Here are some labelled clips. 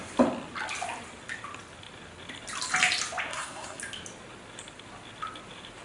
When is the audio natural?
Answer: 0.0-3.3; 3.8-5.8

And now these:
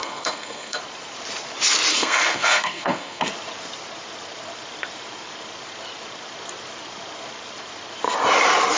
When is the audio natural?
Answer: 0.8-1.9; 3.3-8.8

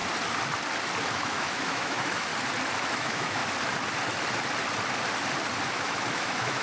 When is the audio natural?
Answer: 0.0-1.1; 2.3-2.9; 3.4-5.6

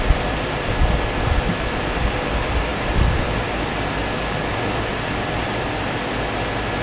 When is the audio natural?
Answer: 0.0-6.8

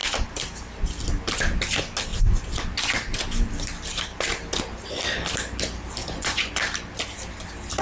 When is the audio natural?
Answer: 0.0-6.0; 6.5-7.8

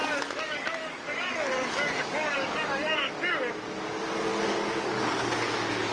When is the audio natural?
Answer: 3.5-4.3; 5.5-5.9

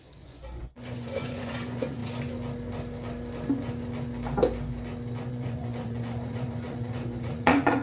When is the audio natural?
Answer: 2.0-5.3

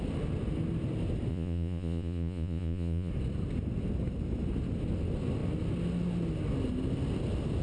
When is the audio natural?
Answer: 0.0-1.3; 3.1-7.6